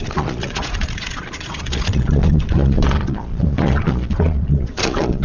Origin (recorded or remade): remade